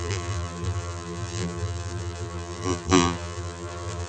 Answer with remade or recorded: remade